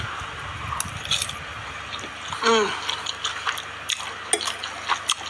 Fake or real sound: real